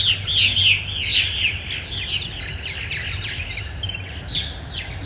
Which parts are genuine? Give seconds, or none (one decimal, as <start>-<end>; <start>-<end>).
0.0-5.1